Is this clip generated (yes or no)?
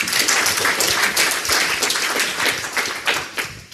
no